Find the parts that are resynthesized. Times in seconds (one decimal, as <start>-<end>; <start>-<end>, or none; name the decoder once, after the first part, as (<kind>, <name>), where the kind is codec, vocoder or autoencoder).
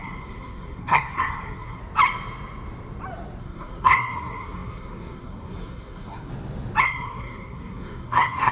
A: 0.0-1.8 (codec, SNAC); 3.4-6.3; 6.8-8.5